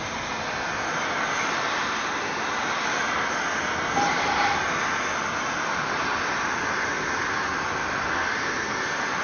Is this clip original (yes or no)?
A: yes